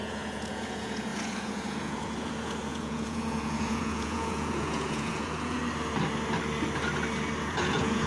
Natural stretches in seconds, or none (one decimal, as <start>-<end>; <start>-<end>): 5.6-7.4

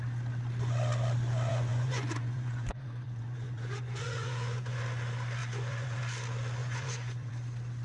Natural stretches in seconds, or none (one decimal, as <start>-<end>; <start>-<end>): 0.0-1.5; 4.8-5.4; 6.0-6.6; 7.3-7.8

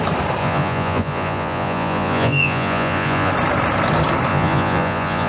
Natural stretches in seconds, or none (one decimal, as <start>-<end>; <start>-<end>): 0.0-0.4; 3.3-4.3

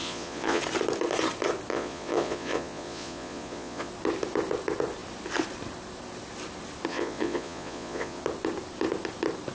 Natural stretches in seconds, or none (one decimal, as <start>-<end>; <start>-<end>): 0.6-1.7; 3.9-6.9; 8.2-9.5